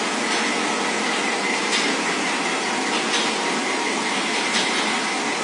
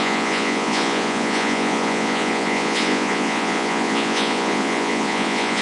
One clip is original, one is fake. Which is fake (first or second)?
second